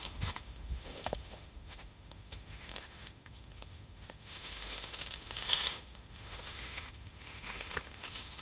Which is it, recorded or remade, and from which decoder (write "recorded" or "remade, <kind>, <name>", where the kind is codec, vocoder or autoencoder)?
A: remade, autoencoder, DAC-VAE